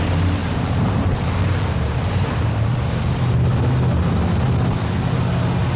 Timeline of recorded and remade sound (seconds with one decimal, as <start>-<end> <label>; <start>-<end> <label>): 0.0-0.4 recorded; 0.4-2.1 remade; 2.1-5.8 recorded